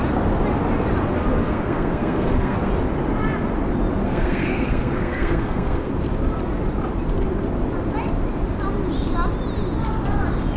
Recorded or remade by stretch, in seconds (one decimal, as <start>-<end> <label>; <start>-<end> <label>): 0.0-1.4 recorded; 1.4-2.7 remade; 2.7-4.0 recorded; 4.0-5.9 remade; 5.9-10.6 recorded